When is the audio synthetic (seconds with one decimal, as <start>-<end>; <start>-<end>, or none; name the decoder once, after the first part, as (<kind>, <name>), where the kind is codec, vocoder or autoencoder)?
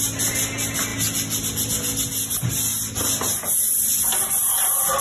none